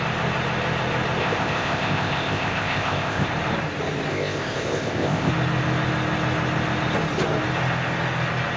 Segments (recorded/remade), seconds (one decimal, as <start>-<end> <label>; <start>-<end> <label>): 0.0-1.2 recorded; 1.2-3.3 remade; 3.3-4.1 recorded; 4.1-5.3 remade; 5.3-8.6 recorded